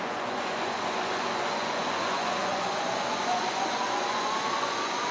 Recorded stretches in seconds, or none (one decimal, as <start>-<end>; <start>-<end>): none